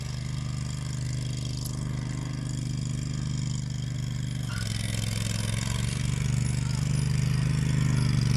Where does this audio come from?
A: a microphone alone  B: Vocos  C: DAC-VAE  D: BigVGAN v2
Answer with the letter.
A